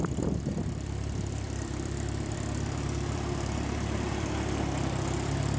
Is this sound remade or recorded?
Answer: remade